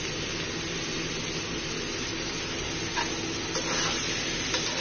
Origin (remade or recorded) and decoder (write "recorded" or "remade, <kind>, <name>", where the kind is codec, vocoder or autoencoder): recorded